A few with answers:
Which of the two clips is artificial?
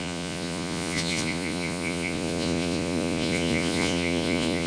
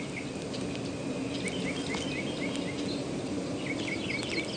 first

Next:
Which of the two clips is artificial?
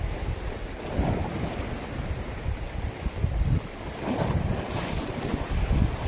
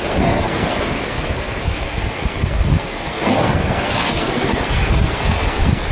second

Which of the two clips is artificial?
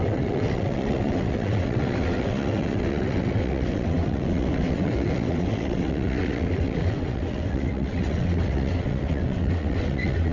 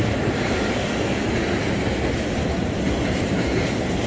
first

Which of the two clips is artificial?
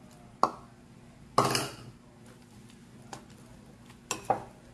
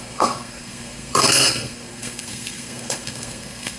second